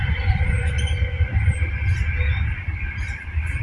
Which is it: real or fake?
fake